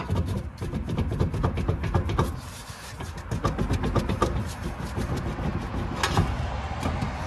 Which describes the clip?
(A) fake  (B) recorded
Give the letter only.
B